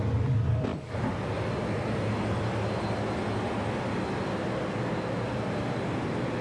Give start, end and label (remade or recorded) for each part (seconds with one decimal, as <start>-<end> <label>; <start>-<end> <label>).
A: 0.0-6.4 recorded